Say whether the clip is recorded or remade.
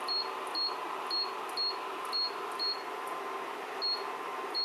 recorded